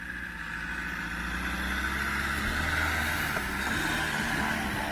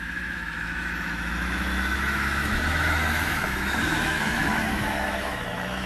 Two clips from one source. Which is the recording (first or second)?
first